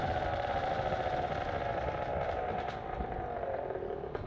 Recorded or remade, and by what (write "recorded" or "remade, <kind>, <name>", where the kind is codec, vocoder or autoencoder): remade, vocoder, BigVGAN v2